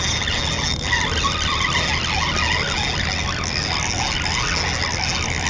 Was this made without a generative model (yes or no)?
yes